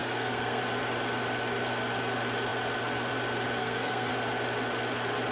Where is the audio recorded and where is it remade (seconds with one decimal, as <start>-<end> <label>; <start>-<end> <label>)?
0.0-0.6 remade; 0.6-3.6 recorded; 3.6-4.1 remade; 4.1-5.3 recorded